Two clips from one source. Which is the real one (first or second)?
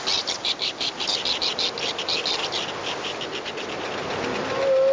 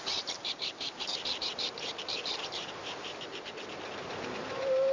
first